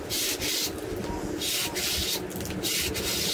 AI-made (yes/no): no